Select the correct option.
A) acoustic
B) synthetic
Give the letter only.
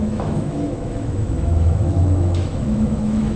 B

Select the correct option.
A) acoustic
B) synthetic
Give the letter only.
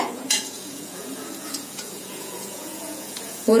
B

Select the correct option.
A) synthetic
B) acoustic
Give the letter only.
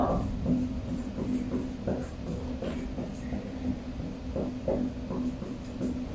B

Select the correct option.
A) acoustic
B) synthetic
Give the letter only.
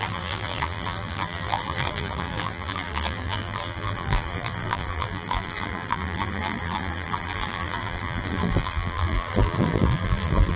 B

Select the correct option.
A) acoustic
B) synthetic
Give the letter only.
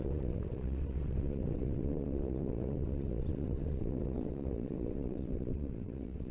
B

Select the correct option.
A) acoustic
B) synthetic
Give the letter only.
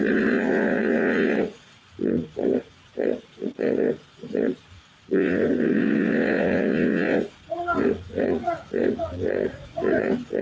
B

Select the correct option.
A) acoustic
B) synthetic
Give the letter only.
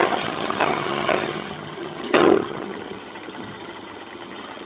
B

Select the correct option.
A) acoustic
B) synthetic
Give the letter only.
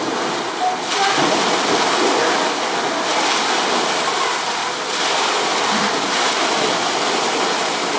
A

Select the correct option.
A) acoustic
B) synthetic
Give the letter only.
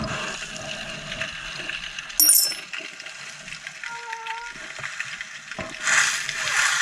A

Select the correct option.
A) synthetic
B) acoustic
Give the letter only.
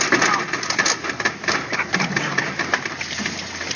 B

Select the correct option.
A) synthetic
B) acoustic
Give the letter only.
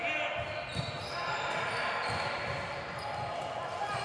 B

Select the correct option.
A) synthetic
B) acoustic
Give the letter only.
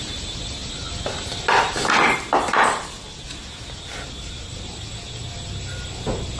B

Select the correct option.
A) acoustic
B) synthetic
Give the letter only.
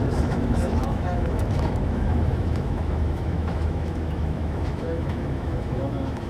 B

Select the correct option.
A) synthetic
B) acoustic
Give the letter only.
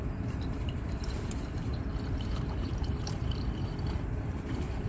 A